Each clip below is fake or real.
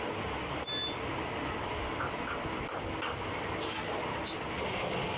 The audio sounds real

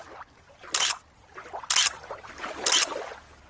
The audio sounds real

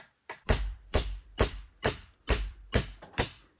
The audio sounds fake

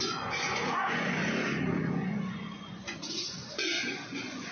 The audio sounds fake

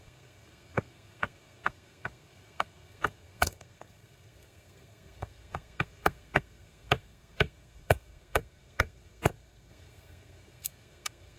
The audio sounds fake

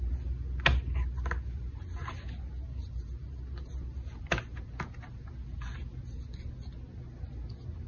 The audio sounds real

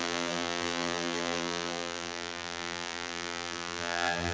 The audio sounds fake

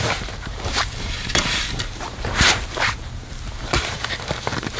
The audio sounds fake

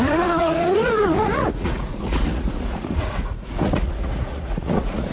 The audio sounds fake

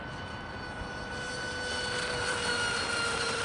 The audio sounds real